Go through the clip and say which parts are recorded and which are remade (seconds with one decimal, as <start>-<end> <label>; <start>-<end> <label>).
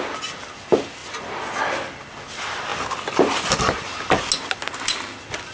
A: 0.0-5.5 recorded